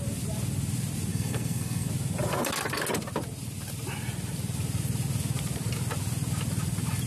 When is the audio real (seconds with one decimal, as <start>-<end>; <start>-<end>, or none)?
0.0-1.1; 1.9-7.1